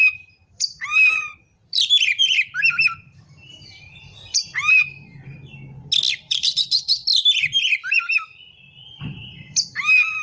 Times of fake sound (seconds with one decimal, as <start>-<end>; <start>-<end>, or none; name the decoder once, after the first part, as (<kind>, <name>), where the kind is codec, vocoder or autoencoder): 0.0-5.4 (vocoder, BigVGAN v2); 6.2-7.0; 8.9-10.2